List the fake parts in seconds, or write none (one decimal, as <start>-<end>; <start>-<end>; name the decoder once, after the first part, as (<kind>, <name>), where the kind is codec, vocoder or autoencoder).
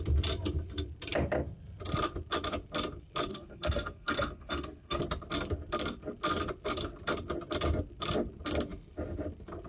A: 3.3-5.0 (codec, SNAC)